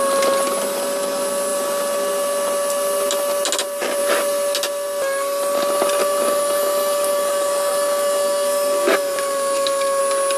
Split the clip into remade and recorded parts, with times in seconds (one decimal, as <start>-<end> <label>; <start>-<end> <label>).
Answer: 0.0-6.0 recorded; 6.0-10.0 remade; 10.0-10.4 recorded